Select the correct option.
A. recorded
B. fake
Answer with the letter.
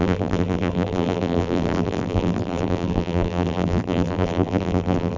B